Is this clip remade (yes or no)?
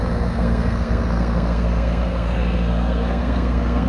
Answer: yes